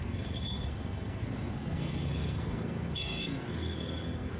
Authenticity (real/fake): fake